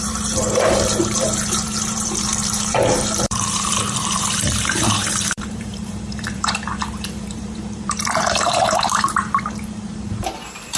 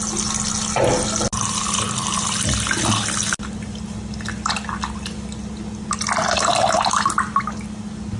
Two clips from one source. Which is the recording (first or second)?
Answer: second